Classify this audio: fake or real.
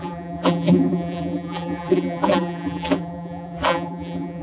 fake